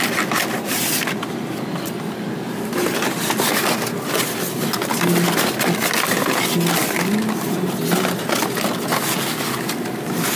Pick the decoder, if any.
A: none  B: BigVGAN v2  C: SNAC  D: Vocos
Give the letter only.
A